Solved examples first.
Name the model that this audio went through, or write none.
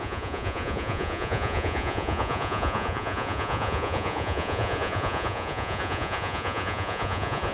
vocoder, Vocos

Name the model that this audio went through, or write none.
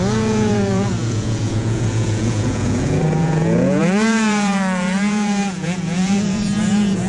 vocoder, Vocos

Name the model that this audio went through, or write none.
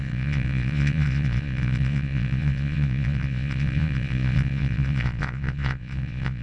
vocoder, Vocos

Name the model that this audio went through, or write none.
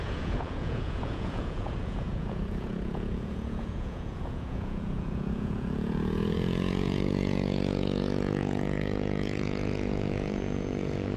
vocoder, Vocos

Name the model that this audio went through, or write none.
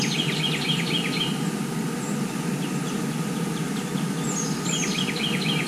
none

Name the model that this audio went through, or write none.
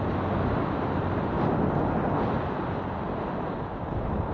none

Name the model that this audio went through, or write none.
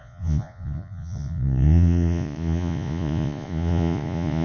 vocoder, Vocos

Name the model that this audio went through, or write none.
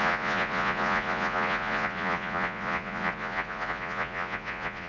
vocoder, Vocos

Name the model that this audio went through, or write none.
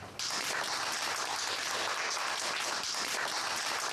none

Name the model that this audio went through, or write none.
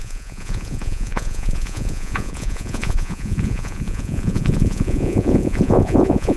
vocoder, Vocos